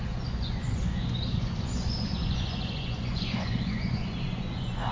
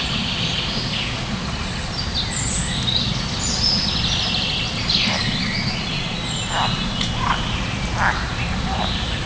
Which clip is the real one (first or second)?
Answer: second